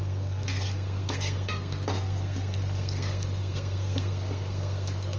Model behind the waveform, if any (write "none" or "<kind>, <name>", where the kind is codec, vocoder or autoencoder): codec, SNAC